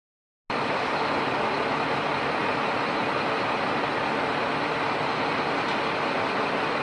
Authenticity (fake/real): real